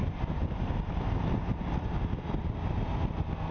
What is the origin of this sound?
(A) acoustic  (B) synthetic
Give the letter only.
A